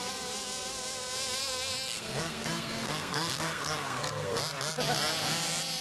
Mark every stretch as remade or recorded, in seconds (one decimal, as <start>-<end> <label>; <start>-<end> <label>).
0.0-1.4 recorded; 1.4-4.4 remade; 4.4-5.8 recorded